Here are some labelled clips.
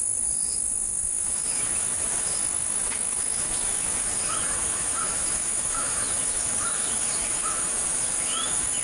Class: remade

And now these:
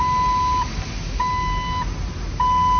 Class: recorded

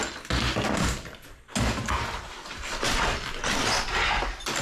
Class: recorded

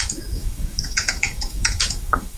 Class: remade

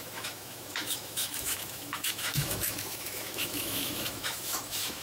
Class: remade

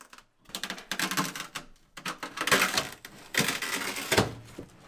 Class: recorded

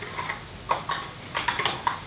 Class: recorded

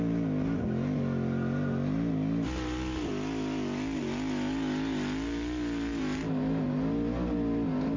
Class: recorded